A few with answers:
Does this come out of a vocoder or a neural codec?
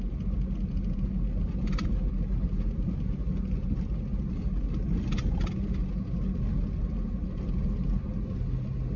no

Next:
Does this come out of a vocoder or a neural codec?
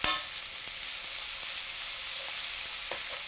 no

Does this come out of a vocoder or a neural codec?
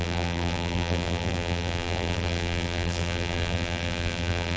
yes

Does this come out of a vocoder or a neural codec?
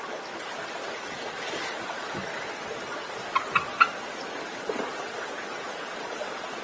yes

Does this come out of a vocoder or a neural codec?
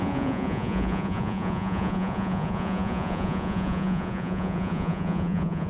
yes